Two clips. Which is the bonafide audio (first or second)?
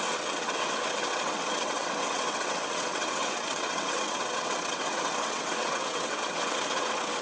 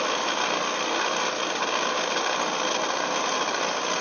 second